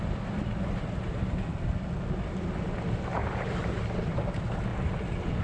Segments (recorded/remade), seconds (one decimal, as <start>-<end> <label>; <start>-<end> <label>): 0.0-3.2 recorded; 3.2-4.2 remade; 4.2-5.4 recorded